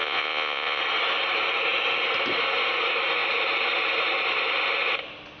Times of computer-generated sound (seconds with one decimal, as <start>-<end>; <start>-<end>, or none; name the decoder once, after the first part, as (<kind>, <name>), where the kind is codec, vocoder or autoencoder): 0.0-0.8 (vocoder, Vocos)